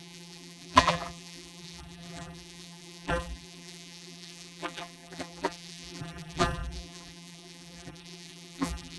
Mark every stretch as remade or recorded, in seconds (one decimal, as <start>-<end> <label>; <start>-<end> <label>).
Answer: 0.0-9.0 remade